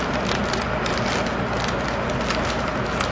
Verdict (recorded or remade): recorded